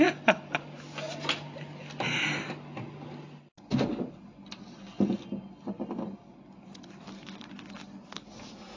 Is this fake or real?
real